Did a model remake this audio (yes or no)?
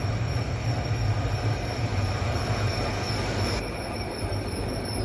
yes